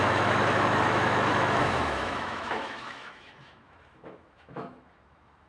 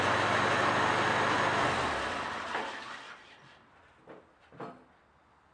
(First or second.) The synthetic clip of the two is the first